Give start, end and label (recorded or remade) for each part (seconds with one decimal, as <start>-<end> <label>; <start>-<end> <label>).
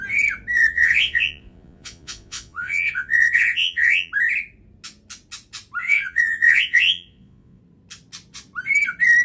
0.0-0.7 recorded; 0.7-4.1 remade; 4.1-5.8 recorded; 5.8-7.6 remade; 7.6-9.2 recorded